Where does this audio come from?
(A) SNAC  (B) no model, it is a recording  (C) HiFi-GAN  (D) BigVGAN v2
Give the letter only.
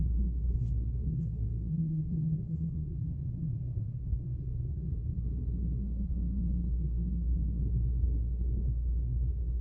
A